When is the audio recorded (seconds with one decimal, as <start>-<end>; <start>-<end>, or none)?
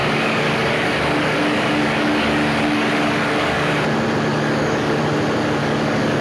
3.7-4.3; 5.0-5.6